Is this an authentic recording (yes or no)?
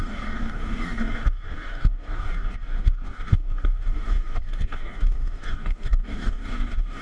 no